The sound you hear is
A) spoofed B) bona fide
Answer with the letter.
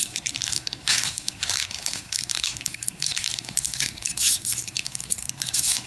A